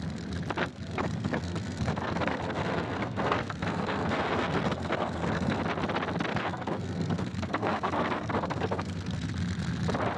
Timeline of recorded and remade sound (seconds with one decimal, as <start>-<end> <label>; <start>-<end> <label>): 0.0-0.6 recorded; 0.6-5.6 remade; 5.6-6.3 recorded; 6.3-9.3 remade; 9.3-10.2 recorded